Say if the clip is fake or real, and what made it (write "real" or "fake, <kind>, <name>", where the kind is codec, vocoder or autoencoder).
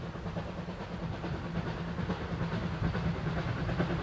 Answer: real